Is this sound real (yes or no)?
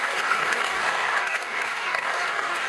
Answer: no